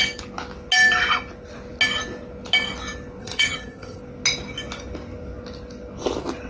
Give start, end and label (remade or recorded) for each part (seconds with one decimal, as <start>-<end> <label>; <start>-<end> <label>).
0.0-3.2 recorded; 3.2-4.0 remade; 4.0-6.5 recorded